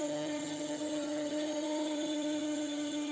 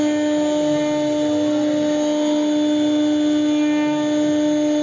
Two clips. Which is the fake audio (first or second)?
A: first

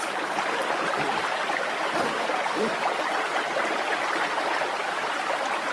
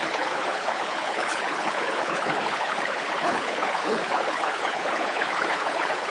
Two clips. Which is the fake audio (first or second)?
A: second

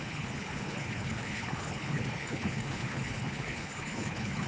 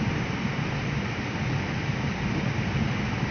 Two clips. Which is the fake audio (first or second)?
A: first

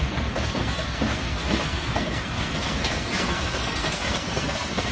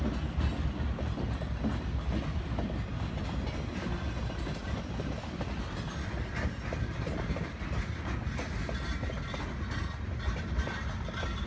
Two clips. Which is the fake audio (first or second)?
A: first